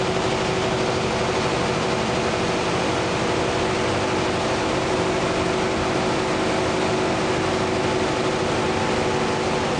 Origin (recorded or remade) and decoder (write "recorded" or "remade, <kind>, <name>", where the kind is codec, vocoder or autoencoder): recorded